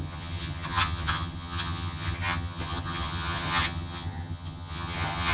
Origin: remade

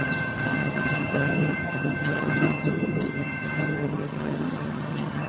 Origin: remade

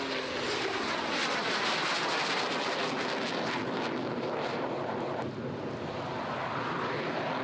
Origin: recorded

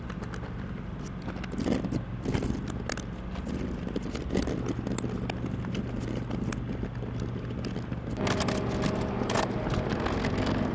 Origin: recorded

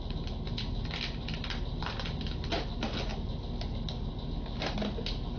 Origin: recorded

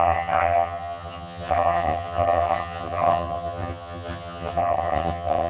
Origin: remade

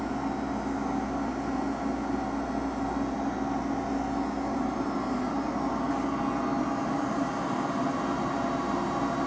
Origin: recorded